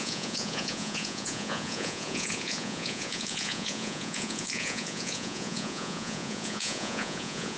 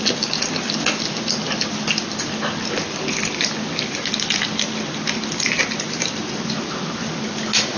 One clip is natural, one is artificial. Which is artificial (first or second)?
first